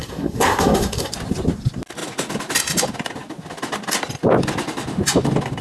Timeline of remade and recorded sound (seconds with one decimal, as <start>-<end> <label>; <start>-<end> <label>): 0.0-1.1 remade; 1.1-5.6 recorded